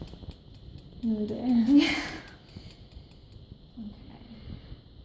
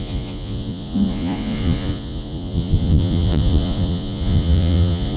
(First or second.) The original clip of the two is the first